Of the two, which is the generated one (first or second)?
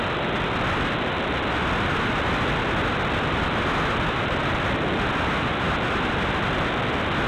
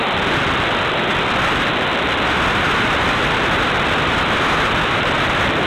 second